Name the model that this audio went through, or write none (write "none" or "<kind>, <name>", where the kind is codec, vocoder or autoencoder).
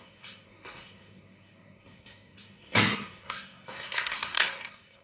codec, SNAC